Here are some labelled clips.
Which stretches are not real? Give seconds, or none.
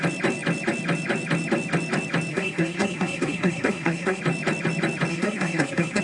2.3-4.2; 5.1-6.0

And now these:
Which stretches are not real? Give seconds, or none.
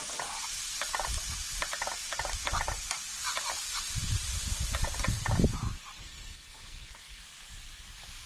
6.0-7.2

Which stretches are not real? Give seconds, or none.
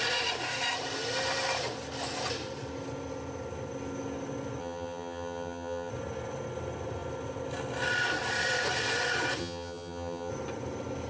4.6-5.9; 9.4-10.3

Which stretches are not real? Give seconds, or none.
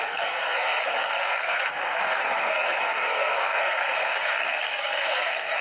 0.0-5.6